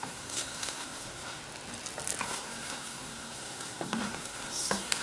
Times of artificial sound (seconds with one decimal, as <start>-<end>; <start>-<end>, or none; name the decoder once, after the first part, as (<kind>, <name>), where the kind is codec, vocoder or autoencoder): 0.0-1.4 (codec, SNAC); 2.2-5.0